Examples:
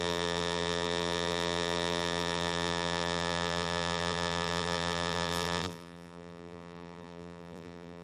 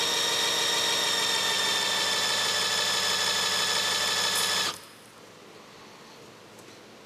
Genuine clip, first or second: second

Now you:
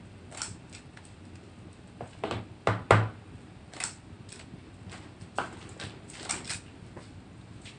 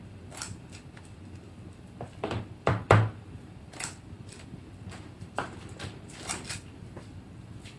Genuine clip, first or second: first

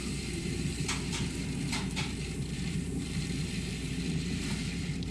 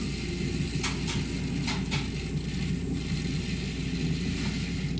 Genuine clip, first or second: second